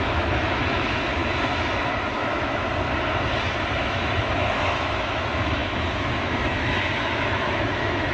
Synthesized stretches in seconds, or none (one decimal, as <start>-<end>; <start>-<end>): 0.0-1.2; 2.0-2.6; 3.8-8.1